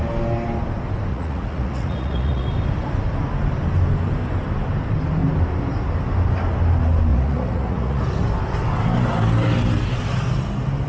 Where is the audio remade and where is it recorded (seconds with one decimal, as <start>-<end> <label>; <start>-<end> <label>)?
0.0-1.1 recorded; 1.1-2.5 remade; 2.5-7.1 recorded; 7.1-8.0 remade; 8.0-10.9 recorded